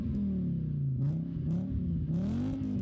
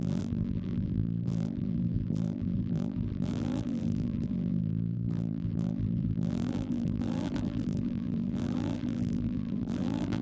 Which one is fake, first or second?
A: second